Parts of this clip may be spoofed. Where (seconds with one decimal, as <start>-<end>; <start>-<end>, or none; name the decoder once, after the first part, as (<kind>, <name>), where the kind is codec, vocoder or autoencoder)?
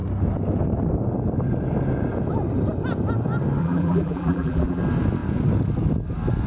3.6-4.8 (vocoder, BigVGAN v2)